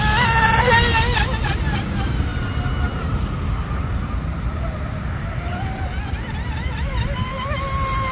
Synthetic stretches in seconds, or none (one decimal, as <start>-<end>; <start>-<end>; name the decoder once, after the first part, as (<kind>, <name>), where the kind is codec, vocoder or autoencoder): none